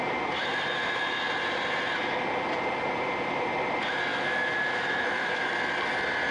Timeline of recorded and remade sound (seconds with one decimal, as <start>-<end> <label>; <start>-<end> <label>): 0.0-4.1 recorded; 4.1-5.5 remade; 5.5-6.3 recorded